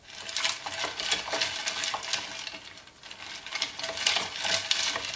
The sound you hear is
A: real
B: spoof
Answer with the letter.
A